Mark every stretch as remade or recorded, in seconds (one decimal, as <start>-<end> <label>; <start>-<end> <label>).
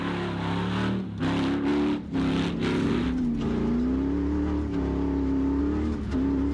0.0-6.5 recorded